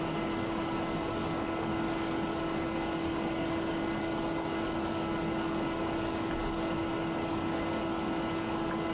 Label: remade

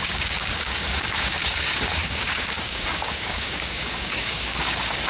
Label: remade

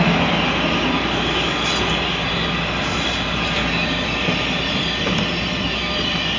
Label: recorded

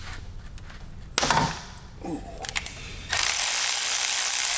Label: recorded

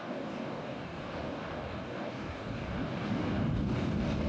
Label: remade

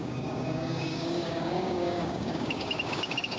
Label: remade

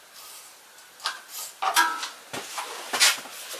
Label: recorded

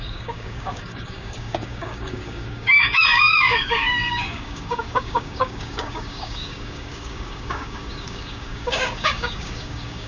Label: remade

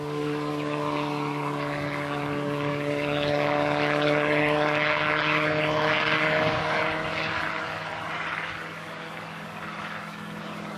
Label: remade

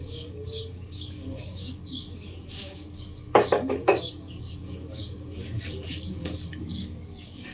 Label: remade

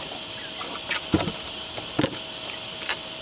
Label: recorded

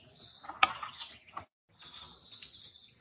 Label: recorded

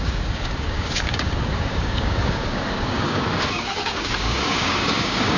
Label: remade